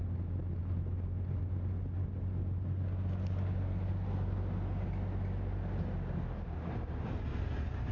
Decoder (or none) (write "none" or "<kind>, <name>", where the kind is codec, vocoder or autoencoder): none